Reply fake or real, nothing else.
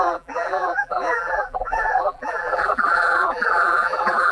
fake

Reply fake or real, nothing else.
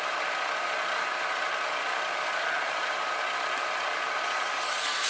real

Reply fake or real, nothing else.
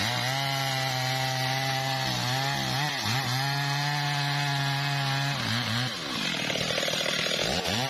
real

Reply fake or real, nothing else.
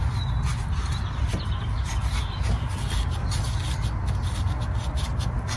real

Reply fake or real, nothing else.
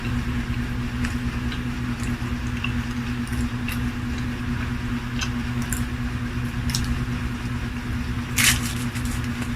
real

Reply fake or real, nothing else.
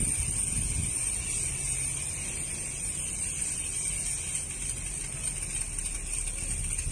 real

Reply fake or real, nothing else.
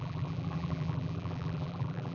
fake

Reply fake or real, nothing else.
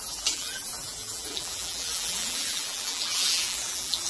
fake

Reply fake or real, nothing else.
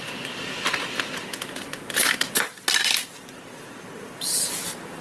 real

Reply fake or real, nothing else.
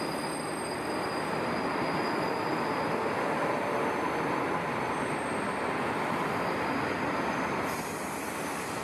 fake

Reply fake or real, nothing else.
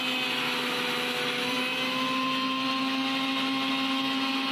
real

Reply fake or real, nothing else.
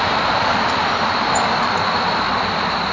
fake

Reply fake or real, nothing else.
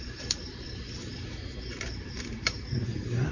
fake